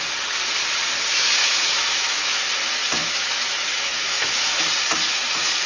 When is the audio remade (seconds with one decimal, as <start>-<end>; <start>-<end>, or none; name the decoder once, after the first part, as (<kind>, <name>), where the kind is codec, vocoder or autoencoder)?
1.4-2.4 (autoencoder, DAC-VAE); 3.0-4.6